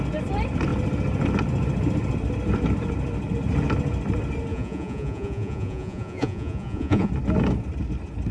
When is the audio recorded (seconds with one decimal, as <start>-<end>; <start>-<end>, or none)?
0.0-4.5; 7.1-8.3

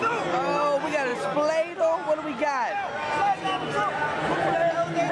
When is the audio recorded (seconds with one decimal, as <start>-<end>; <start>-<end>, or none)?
0.0-5.1

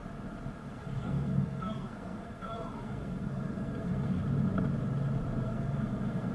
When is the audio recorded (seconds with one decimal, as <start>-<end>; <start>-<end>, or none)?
0.0-0.7; 4.2-5.4

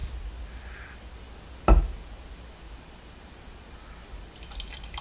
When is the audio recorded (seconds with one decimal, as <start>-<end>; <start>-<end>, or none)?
0.0-5.0

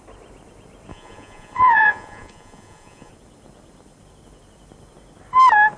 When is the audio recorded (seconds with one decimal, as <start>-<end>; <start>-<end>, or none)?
0.0-0.9; 3.1-5.8

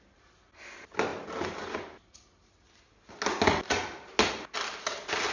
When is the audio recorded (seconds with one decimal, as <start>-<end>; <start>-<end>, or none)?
0.0-5.3

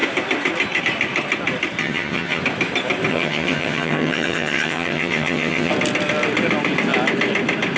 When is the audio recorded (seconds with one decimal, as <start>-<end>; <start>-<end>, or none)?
0.0-1.8; 2.4-3.1; 5.7-7.8

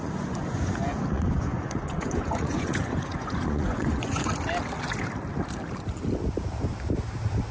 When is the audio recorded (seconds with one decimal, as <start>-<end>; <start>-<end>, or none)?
4.3-7.5